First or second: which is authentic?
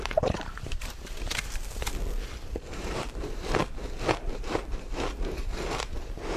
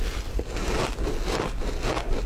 second